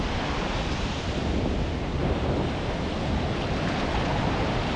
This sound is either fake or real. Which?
real